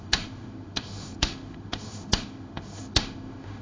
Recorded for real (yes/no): no